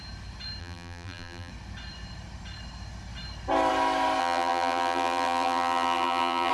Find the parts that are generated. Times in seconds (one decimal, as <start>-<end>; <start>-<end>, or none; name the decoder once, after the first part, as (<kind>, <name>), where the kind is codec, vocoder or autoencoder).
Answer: 0.6-1.5 (vocoder, BigVGAN v2); 4.2-6.5